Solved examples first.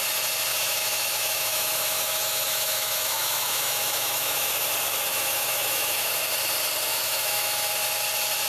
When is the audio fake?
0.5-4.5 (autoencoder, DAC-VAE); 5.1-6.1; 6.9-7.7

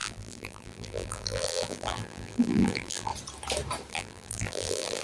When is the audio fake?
0.0-3.1 (vocoder, BigVGAN v2); 3.9-5.0

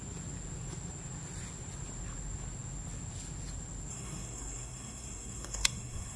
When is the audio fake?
3.9-6.2 (codec, SNAC)

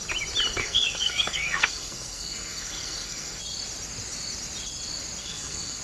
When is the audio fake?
0.6-3.4 (codec, SNAC); 5.2-5.8